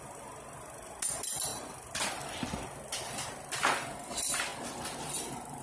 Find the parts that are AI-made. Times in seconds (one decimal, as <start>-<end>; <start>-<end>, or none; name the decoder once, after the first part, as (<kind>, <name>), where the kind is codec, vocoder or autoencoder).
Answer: 1.5-2.9 (vocoder, BigVGAN v2); 4.5-5.6